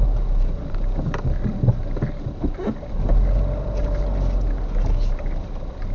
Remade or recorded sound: recorded